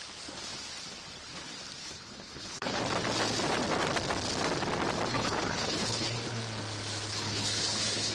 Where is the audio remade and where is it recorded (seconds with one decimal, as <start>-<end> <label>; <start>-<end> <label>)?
0.0-1.8 recorded; 1.8-2.8 remade; 2.8-5.1 recorded; 5.1-6.4 remade; 6.4-7.1 recorded; 7.1-8.1 remade